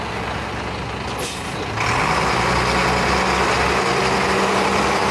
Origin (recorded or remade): recorded